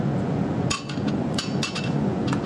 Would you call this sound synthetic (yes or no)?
yes